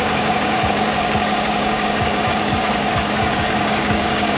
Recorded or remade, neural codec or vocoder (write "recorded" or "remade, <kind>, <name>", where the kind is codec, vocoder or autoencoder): remade, codec, DAC